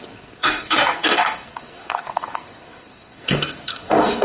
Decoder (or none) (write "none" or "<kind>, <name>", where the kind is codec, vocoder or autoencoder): codec, SNAC